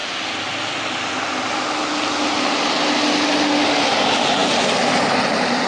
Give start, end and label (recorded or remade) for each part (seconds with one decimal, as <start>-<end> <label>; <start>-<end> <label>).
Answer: 0.0-5.7 recorded